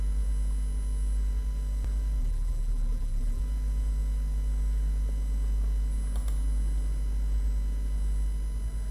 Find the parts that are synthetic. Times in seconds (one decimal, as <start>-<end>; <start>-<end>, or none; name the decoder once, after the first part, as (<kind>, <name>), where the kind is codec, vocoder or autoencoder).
2.2-3.4 (vocoder, BigVGAN v2)